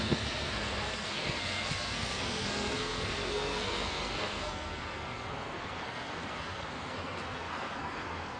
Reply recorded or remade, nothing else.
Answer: remade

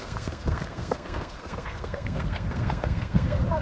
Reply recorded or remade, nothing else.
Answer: remade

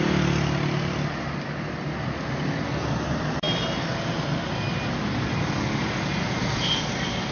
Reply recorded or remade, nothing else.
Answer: recorded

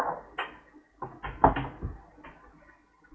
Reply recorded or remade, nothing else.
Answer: recorded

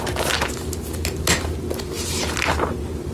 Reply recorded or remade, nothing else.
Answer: recorded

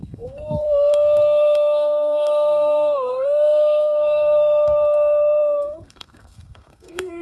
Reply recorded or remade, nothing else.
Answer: remade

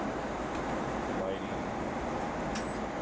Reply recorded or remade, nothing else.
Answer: recorded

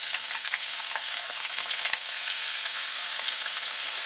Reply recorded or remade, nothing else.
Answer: remade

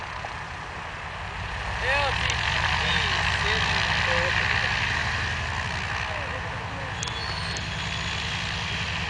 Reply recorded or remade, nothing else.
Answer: recorded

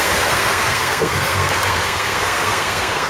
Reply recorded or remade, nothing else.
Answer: remade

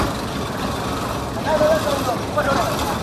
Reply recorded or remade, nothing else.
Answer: recorded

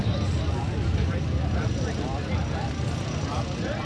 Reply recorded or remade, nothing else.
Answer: recorded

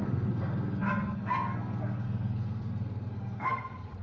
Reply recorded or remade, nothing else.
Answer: remade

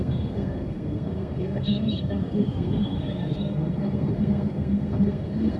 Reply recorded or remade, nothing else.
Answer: remade